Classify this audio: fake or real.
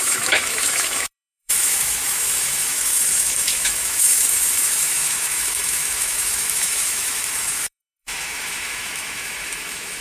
fake